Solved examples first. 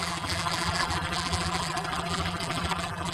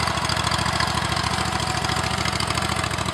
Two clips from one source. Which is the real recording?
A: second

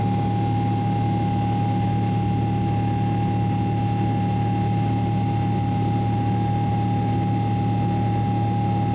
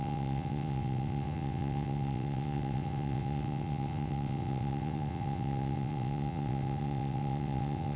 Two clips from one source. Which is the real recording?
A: first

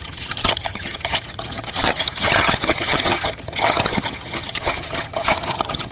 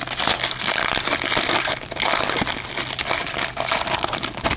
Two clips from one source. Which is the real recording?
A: second